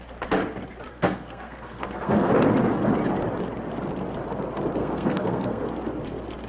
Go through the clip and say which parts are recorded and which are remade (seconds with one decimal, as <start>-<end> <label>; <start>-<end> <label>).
0.0-0.9 recorded; 0.9-2.3 remade; 2.3-4.8 recorded; 4.8-5.6 remade; 5.6-6.5 recorded